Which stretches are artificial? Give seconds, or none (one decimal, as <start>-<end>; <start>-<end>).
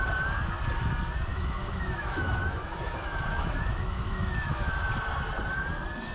1.3-4.9